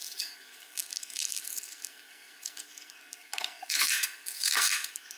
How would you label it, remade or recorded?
remade